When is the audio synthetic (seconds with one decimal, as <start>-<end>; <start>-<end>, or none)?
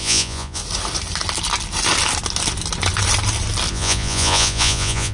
0.0-0.6; 3.7-5.1